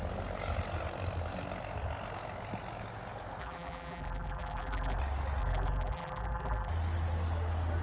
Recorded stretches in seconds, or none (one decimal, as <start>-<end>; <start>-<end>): 0.0-3.4; 5.0-5.4; 6.7-7.8